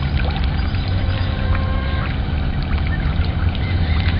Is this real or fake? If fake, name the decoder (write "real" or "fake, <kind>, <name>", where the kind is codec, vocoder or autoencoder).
fake, vocoder, BigVGAN v2